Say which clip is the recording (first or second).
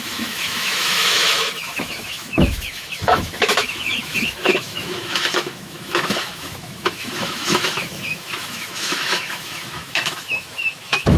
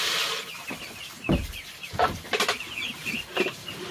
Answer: second